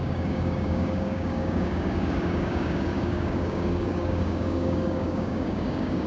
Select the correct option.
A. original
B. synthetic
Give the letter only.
B